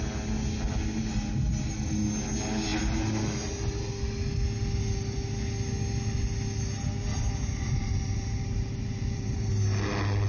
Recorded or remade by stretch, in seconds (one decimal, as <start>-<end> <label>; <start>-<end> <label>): 0.0-0.7 recorded; 0.7-1.3 remade; 1.3-7.8 recorded; 7.8-9.5 remade; 9.5-10.3 recorded